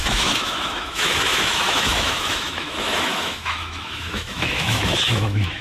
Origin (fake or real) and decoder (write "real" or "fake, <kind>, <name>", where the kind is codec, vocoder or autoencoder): fake, autoencoder, DAC-VAE